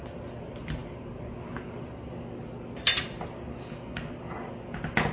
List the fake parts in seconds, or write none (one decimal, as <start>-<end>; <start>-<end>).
3.5-4.1